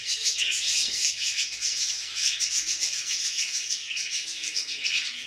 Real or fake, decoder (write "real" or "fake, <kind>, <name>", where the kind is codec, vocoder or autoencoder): fake, codec, SNAC